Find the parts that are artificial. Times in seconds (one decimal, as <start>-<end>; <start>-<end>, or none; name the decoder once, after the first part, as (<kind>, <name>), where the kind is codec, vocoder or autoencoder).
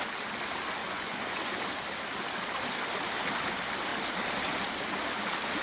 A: 0.8-1.5 (vocoder, Vocos)